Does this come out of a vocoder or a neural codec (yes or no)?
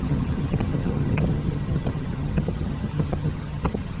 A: yes